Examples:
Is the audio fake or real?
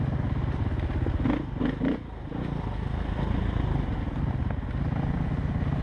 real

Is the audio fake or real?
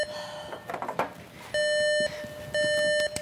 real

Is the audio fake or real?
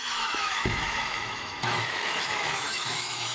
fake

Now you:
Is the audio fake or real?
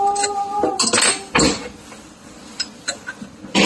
real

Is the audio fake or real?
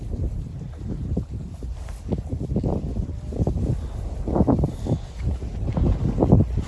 real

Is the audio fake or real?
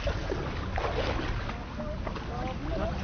real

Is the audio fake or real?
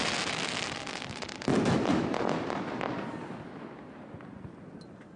real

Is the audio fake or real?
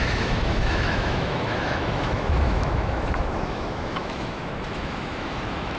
fake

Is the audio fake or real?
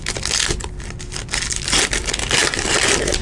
real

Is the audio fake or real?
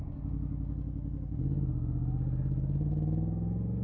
real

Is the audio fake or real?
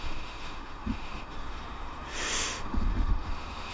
fake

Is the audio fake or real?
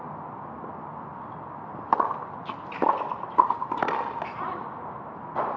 real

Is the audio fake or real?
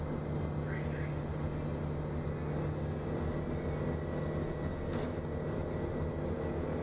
real